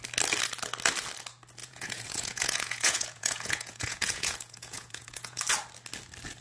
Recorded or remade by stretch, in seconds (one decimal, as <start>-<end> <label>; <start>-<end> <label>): 0.0-1.6 recorded; 1.6-5.4 remade; 5.4-6.4 recorded